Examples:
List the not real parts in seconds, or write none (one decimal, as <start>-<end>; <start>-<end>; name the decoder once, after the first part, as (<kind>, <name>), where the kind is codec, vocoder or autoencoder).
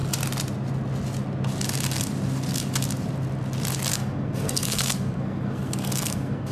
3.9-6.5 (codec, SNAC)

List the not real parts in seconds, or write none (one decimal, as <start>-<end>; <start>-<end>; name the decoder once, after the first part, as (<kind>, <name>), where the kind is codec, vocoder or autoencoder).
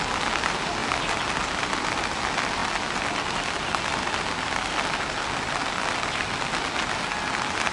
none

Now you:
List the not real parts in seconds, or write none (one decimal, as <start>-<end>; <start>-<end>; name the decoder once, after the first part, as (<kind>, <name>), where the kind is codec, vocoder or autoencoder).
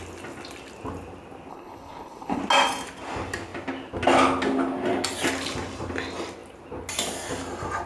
1.5-2.4 (codec, HILCodec)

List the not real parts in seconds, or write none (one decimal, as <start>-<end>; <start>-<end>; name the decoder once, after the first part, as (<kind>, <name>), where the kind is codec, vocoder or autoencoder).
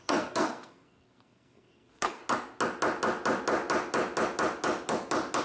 0.0-2.2 (codec, SNAC)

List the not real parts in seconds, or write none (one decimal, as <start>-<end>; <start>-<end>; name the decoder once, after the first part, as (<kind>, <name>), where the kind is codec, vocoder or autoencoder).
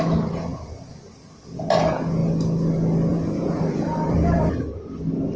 3.1-4.6 (vocoder, BigVGAN v2)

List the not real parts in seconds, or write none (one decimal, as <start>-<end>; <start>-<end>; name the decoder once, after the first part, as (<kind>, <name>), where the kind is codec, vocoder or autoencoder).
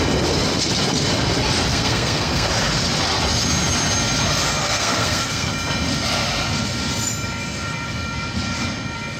1.7-2.5 (codec, SNAC); 4.6-5.5